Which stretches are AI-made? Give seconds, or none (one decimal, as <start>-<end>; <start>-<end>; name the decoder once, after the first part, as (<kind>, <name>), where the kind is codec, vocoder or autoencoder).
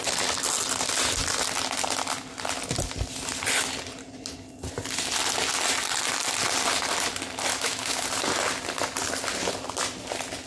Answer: 7.5-8.0 (autoencoder, DAC-VAE)